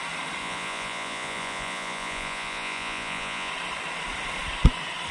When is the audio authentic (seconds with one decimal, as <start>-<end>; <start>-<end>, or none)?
0.0-0.4; 3.5-5.1